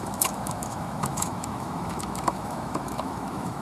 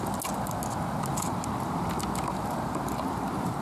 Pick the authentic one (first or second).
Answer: second